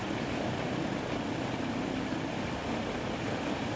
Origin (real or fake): real